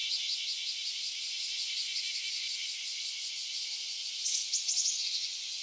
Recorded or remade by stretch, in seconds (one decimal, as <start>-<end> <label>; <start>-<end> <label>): 0.0-3.3 remade; 3.3-4.2 recorded; 4.2-5.6 remade